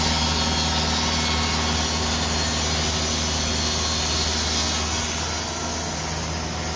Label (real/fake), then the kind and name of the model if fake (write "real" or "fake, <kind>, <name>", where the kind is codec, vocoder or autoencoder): real